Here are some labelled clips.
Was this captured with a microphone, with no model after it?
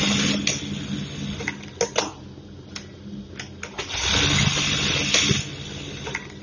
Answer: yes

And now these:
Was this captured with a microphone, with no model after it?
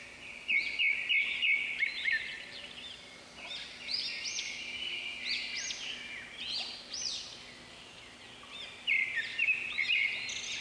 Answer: yes